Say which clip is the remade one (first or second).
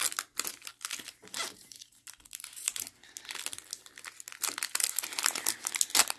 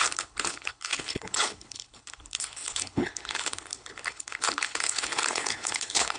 second